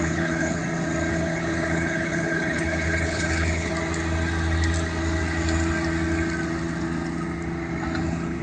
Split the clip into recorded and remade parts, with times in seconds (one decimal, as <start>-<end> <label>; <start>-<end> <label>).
0.0-0.6 remade; 0.6-1.1 recorded; 1.1-3.7 remade; 3.7-8.0 recorded; 8.0-8.4 remade